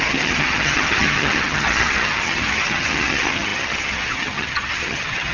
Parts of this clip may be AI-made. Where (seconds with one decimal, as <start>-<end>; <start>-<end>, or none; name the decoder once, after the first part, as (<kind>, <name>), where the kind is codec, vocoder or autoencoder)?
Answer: 0.0-5.3 (vocoder, HiFi-GAN)